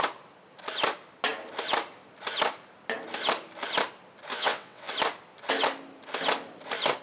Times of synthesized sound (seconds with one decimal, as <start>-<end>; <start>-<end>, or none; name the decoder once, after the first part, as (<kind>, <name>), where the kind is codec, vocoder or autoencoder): 4.3-4.9 (vocoder, WaveNeXt)